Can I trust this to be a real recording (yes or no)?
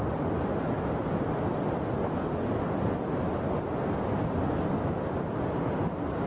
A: yes